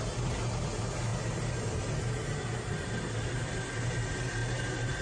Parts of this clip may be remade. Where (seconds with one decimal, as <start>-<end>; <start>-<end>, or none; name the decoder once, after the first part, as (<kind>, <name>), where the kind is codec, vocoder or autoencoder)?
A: 4.4-5.0 (vocoder, BigVGAN v2)